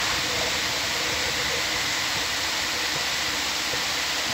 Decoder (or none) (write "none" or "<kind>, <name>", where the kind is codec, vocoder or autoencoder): none